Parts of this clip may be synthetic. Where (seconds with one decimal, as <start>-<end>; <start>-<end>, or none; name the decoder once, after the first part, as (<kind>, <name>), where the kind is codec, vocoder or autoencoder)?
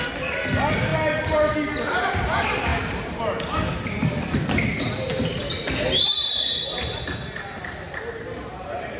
2.7-3.2 (vocoder, BigVGAN v2)